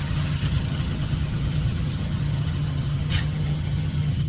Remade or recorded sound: remade